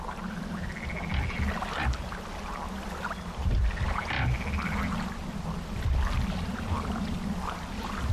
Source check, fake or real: real